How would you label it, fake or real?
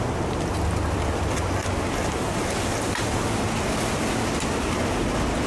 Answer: real